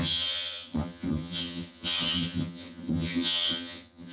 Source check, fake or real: fake